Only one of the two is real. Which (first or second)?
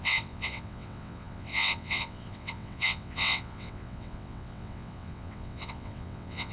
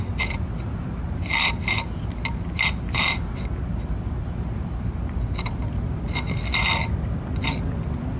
second